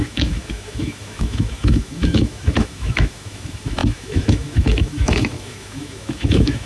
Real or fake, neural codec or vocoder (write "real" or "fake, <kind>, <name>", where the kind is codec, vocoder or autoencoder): fake, autoencoder, DAC-VAE